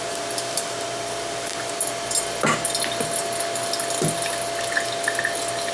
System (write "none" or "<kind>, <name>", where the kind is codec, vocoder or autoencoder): none